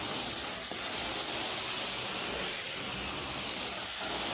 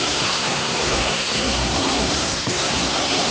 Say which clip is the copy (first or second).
second